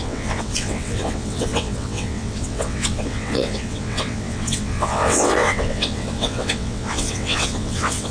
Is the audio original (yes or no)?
no